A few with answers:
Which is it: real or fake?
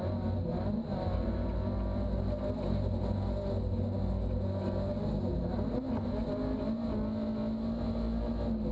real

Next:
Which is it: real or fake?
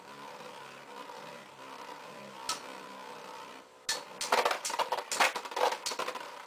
real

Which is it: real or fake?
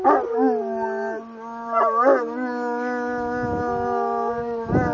real